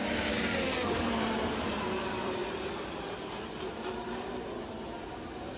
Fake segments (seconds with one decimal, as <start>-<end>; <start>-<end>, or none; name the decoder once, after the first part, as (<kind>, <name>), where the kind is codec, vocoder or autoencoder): none